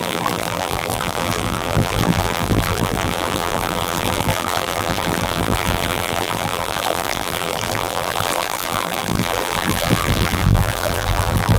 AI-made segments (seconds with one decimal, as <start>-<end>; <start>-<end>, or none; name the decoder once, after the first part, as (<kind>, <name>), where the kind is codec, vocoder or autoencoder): 0.0-11.6 (vocoder, BigVGAN v2)